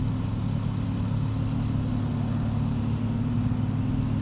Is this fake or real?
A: real